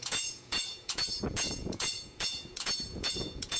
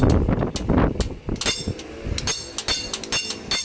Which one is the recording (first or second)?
second